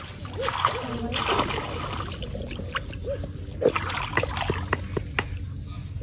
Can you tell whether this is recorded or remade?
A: recorded